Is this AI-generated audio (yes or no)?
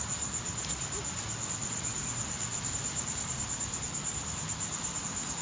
no